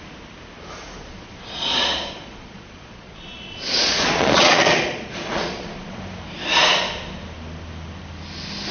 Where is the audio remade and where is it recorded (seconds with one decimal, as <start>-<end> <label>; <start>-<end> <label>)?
0.0-1.0 recorded; 1.0-6.0 remade; 6.0-8.7 recorded